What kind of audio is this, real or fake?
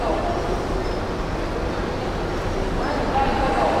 real